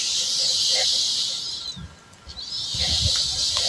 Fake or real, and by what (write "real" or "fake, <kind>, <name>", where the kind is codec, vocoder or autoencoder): real